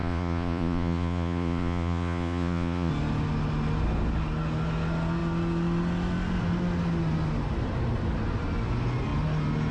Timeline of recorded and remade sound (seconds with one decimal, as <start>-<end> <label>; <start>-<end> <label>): 0.0-2.9 remade; 2.9-9.7 recorded